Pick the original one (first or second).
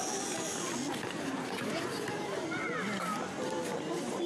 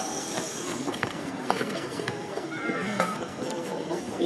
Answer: first